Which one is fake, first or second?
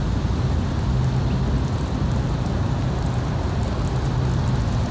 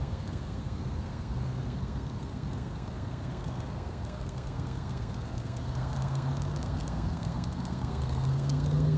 second